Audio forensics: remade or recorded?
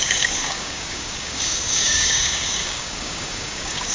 remade